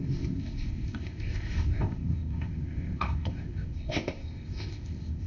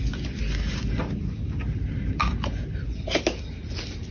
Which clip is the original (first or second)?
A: second